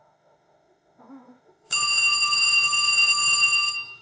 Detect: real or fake fake